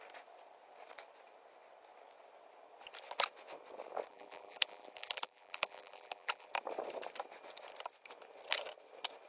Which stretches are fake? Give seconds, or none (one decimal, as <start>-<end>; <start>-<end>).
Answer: 4.1-6.5